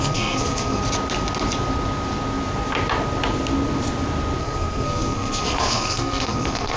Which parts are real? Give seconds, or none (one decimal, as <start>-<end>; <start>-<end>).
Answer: 0.8-4.4